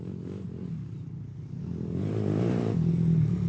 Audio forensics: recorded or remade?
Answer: recorded